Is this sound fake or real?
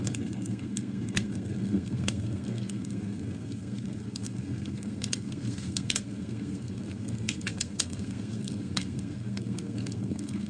fake